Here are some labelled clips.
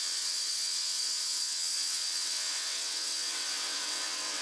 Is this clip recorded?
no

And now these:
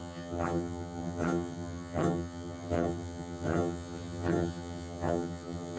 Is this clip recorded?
no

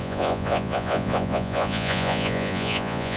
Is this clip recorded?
no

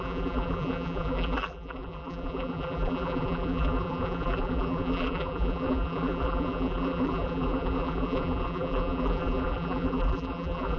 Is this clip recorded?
no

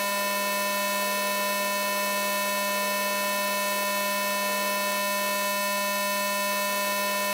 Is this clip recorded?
yes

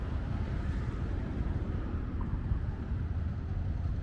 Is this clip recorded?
no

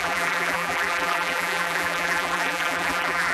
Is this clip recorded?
no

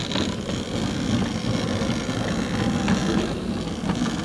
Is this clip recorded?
yes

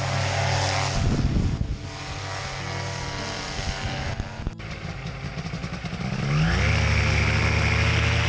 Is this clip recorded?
yes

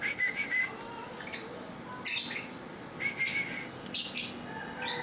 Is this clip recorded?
yes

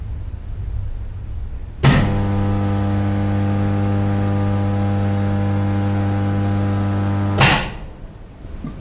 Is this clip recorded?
yes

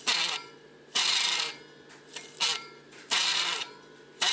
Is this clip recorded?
no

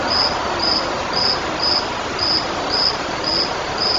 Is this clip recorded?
yes